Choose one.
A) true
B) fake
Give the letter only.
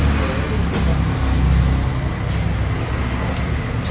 A